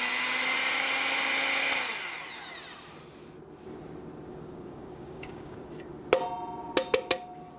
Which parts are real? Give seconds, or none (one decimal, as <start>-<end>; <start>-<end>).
0.0-4.3; 5.6-7.6